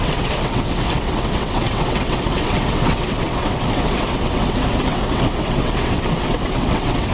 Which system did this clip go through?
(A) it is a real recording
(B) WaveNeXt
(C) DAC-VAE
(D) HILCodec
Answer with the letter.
B